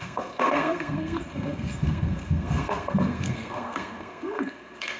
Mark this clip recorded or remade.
remade